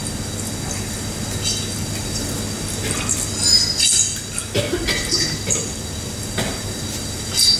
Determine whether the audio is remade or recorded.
recorded